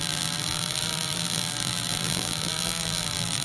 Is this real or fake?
fake